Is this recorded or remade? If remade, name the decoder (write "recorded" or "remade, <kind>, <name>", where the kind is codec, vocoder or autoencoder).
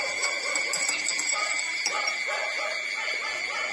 remade, vocoder, BigVGAN v2